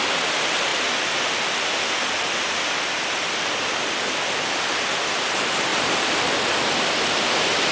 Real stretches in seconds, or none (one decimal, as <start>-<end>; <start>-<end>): 0.0-5.7; 7.2-7.7